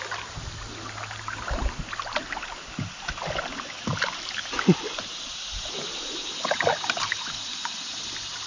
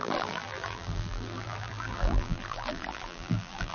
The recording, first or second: first